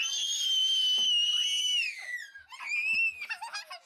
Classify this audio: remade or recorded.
recorded